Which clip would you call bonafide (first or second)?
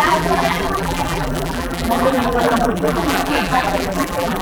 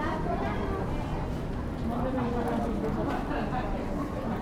second